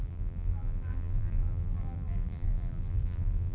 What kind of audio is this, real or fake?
fake